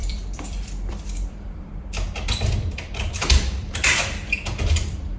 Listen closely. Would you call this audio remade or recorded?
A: remade